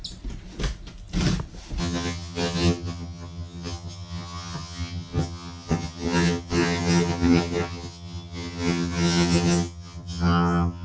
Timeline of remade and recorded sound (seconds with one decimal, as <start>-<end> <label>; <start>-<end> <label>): 0.0-1.8 recorded; 1.8-10.8 remade